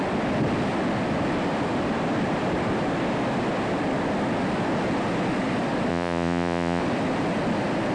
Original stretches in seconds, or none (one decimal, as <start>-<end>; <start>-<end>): 0.0-5.9; 6.8-7.9